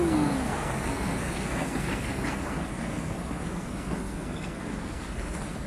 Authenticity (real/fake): fake